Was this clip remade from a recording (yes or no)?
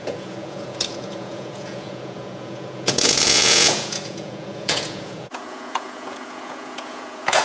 yes